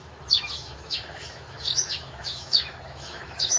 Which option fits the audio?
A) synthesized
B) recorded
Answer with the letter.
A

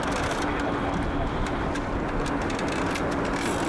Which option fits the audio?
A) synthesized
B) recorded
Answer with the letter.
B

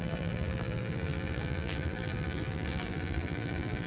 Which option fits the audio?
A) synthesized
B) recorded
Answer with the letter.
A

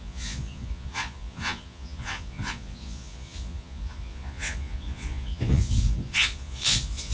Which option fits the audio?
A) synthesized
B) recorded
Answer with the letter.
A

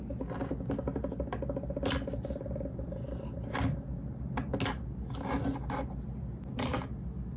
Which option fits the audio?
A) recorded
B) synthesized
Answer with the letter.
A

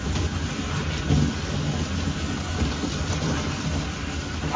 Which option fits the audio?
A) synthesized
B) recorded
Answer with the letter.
B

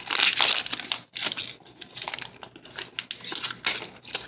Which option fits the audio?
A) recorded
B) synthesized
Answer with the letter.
A